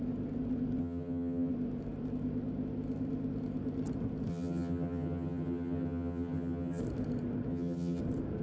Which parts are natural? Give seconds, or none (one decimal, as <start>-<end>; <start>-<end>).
0.0-0.8; 1.5-4.3; 6.8-7.5; 8.0-8.4